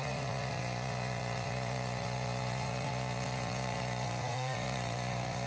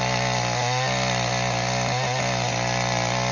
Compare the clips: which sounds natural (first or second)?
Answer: second